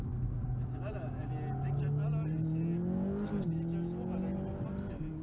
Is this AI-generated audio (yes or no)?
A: no